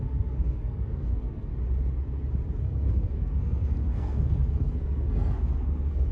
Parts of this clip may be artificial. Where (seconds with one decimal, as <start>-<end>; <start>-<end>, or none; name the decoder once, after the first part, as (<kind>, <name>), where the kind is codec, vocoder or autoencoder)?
0.0-1.5 (codec, SNAC); 2.6-6.1